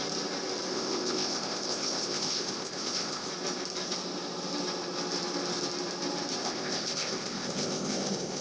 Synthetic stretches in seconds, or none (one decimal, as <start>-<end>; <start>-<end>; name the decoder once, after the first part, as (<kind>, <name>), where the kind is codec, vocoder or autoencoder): 0.7-3.3 (codec, ZipCodec); 6.4-8.4